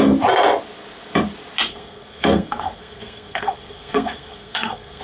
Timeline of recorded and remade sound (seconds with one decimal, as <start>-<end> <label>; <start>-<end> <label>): 0.0-1.7 recorded; 1.7-5.0 remade